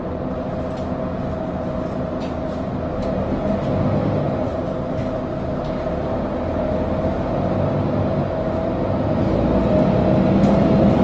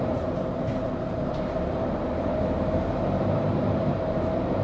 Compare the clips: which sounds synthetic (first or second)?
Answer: second